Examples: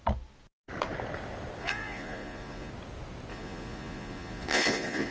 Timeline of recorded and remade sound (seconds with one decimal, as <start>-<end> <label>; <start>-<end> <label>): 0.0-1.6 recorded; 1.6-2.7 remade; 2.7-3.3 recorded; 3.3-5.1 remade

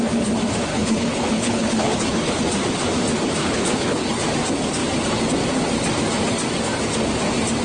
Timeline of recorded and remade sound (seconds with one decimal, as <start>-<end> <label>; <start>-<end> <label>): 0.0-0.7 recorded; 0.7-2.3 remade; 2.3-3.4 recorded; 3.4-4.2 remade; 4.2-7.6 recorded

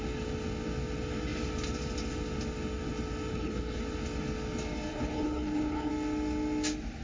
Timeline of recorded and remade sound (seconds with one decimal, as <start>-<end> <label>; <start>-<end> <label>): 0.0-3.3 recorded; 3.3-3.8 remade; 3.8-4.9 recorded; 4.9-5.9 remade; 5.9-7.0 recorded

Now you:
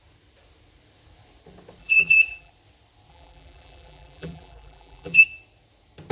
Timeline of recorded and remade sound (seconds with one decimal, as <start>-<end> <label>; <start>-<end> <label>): 0.0-1.8 recorded; 1.8-2.5 remade; 2.5-3.1 recorded; 3.1-5.2 remade; 5.2-6.1 recorded

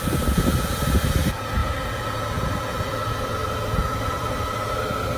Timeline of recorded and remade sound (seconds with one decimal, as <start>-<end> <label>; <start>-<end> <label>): 0.0-5.2 remade